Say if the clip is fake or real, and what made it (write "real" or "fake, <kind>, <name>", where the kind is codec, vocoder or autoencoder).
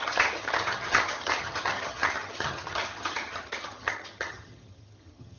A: fake, vocoder, HiFi-GAN